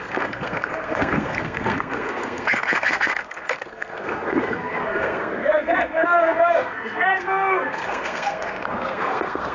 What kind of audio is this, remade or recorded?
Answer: remade